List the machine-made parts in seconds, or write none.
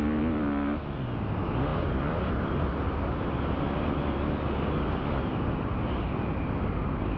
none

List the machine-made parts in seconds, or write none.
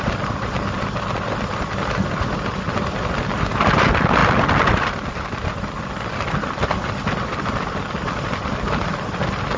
none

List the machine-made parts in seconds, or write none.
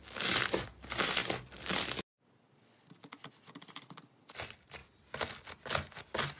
none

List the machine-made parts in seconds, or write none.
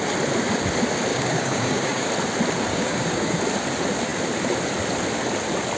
1.1-2.1 (codec, DAC); 2.7-3.4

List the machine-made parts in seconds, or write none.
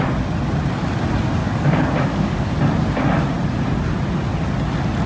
1.4-2.5 (codec, DAC)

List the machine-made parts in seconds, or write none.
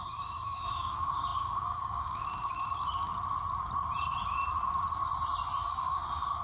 0.0-3.1 (codec, DAC); 5.7-6.4